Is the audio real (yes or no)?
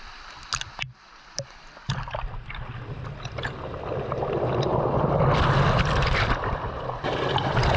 yes